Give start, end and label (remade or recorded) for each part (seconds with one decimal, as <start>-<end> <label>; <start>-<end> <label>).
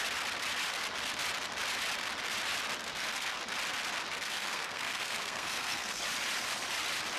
0.0-2.8 recorded; 2.8-3.4 remade; 3.4-4.1 recorded; 4.1-6.0 remade; 6.0-7.2 recorded